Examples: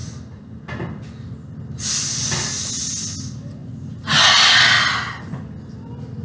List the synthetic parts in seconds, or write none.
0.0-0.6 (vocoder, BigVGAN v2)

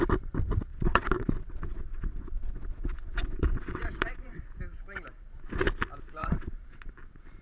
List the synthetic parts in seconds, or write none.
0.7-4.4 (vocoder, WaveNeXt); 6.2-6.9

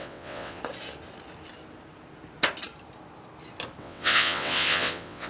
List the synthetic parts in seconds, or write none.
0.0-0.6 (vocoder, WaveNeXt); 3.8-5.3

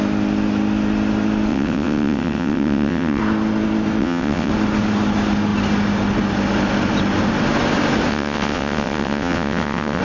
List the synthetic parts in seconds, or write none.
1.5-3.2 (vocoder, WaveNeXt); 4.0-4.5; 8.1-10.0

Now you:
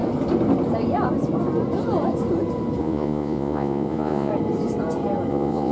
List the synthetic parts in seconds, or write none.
2.8-4.3 (vocoder, Vocos); 5.3-5.7

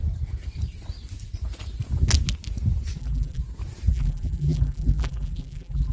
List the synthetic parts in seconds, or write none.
3.0-3.4 (vocoder, BigVGAN v2); 3.9-5.9

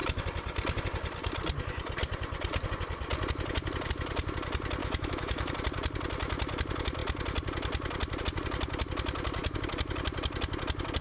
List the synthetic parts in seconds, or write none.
4.8-5.5 (autoencoder, DAC-VAE)

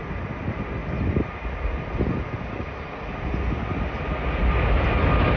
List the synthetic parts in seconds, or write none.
none